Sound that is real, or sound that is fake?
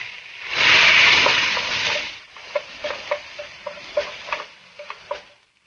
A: real